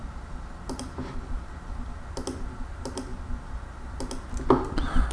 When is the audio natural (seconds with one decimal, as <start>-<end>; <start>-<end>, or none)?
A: 0.0-5.1